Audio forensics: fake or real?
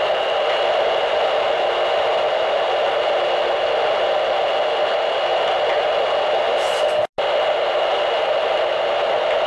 real